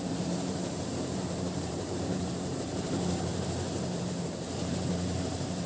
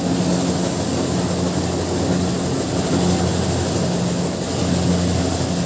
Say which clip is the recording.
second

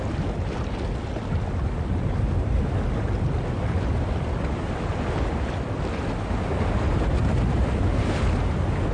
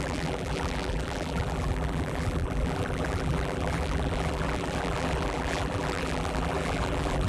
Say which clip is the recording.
first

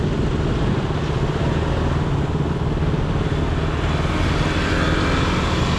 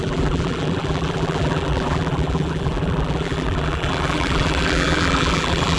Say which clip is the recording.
first